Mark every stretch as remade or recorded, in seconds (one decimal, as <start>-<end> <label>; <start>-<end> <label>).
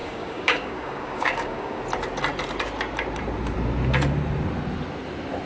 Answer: 0.0-1.8 remade; 1.8-5.5 recorded